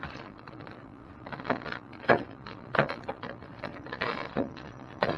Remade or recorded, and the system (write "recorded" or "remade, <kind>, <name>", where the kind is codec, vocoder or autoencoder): remade, vocoder, Vocos